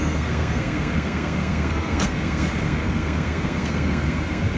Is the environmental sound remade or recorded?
remade